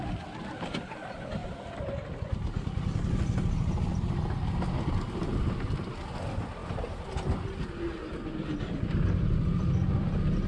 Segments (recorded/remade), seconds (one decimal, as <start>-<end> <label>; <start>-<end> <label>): 0.0-10.5 recorded